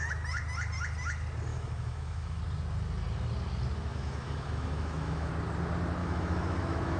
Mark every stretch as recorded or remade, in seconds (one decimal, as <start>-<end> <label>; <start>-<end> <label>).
0.0-1.5 recorded; 1.5-2.4 remade; 2.4-3.9 recorded; 3.9-5.3 remade; 5.3-6.0 recorded; 6.0-7.0 remade

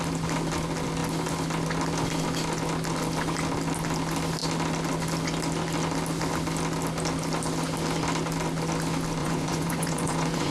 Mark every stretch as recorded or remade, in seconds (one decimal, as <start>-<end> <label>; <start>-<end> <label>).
0.0-9.2 recorded; 9.2-10.5 remade

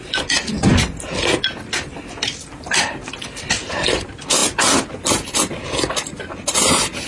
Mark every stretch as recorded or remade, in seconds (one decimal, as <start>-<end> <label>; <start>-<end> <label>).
0.0-7.1 recorded

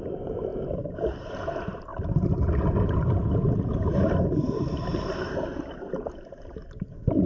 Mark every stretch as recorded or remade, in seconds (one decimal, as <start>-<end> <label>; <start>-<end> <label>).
0.0-7.3 recorded

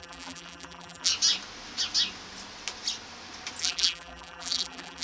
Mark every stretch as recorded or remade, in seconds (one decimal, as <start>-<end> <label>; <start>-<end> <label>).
0.0-1.1 remade; 1.1-3.6 recorded; 3.6-5.0 remade

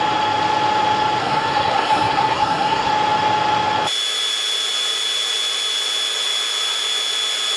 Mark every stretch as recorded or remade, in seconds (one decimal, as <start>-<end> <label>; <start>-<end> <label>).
0.0-1.2 recorded; 1.2-2.9 remade; 2.9-7.6 recorded

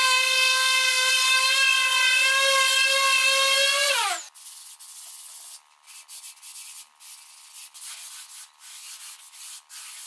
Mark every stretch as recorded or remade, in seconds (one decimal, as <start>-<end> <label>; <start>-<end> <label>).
0.0-1.1 remade; 1.1-10.1 recorded

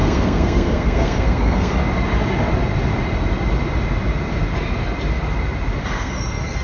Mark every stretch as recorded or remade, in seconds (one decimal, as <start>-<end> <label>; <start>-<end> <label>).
0.0-1.8 remade; 1.8-5.8 recorded; 5.8-6.6 remade